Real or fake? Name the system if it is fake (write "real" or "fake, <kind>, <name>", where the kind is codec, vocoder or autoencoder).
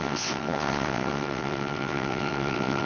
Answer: fake, vocoder, WaveNeXt